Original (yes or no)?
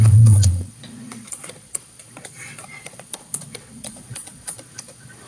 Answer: no